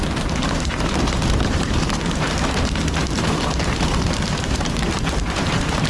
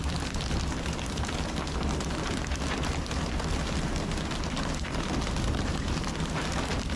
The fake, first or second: first